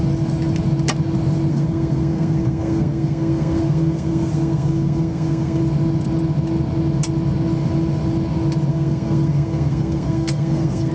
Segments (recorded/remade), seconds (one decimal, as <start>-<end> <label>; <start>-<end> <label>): 0.0-1.5 recorded; 1.5-5.6 remade; 5.6-8.7 recorded; 8.7-10.9 remade